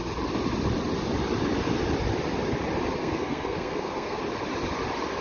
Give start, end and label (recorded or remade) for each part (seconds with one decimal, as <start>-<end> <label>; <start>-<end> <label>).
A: 0.0-3.0 recorded; 3.0-4.2 remade; 4.2-5.2 recorded